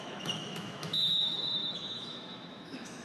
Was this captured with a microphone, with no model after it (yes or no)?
no